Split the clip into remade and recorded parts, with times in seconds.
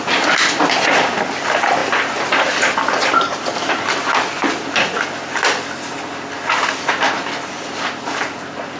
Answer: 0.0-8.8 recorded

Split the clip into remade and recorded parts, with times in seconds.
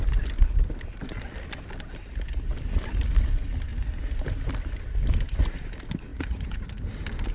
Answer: 0.0-6.1 recorded; 6.1-6.6 remade; 6.6-7.3 recorded